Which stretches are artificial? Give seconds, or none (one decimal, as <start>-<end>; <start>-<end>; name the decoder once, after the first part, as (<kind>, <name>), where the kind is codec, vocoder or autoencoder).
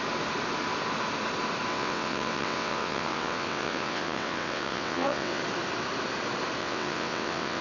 1.7-5.4 (vocoder, WaveNeXt); 6.6-7.6